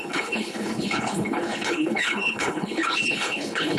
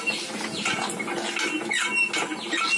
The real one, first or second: second